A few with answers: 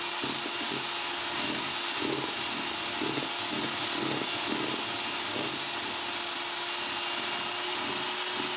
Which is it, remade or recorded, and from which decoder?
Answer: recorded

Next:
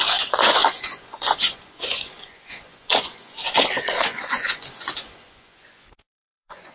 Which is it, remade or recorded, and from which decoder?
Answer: remade, vocoder, Vocos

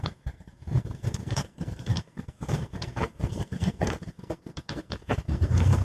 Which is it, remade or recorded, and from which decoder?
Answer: remade, codec, SNAC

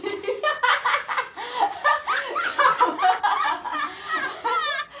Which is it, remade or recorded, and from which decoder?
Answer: recorded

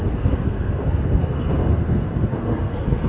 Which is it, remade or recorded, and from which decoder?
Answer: remade, codec, SNAC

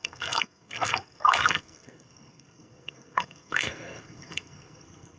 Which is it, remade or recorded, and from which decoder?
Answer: remade, codec, SNAC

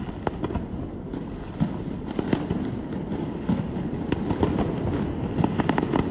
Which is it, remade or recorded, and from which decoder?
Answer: recorded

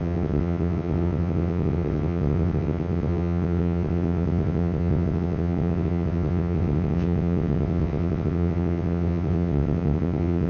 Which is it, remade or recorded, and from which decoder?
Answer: remade, vocoder, WaveNeXt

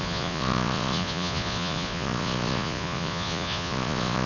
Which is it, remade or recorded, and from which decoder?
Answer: remade, vocoder, Vocos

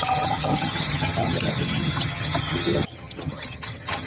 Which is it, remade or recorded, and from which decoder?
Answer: remade, vocoder, HiFi-GAN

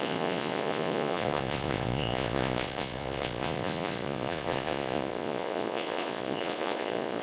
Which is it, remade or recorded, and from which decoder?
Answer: remade, vocoder, Vocos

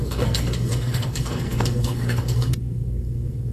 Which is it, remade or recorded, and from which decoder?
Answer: remade, codec, SNAC